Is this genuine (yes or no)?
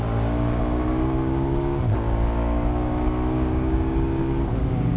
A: no